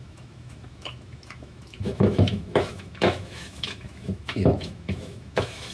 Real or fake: fake